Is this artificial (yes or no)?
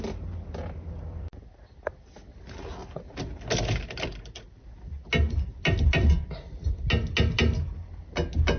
no